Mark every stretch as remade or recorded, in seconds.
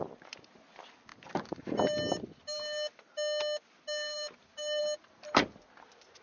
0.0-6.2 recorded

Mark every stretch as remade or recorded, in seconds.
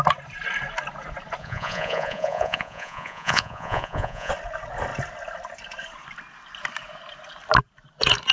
0.0-1.4 recorded; 1.4-4.3 remade; 4.3-8.3 recorded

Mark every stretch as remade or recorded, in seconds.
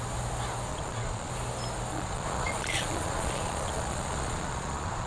0.0-0.7 recorded; 0.7-1.3 remade; 1.3-1.9 recorded; 1.9-5.1 remade